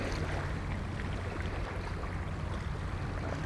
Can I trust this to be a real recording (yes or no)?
yes